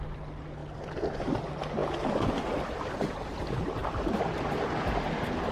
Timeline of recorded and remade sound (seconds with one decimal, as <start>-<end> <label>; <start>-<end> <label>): 0.0-5.5 recorded